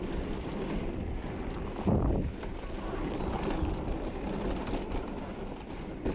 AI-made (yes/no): yes